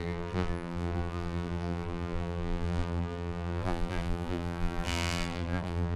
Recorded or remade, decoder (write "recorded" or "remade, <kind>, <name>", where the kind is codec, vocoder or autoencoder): remade, vocoder, BigVGAN v2